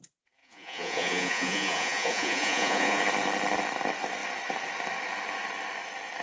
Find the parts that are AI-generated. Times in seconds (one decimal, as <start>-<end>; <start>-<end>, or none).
0.4-3.0